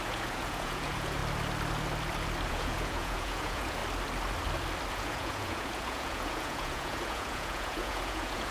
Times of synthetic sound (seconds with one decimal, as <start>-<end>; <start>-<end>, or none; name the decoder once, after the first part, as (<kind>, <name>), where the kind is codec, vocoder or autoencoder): 0.0-1.2 (vocoder, Vocos); 2.5-3.8; 4.9-8.5